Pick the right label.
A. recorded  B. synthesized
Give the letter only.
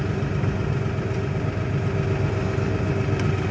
A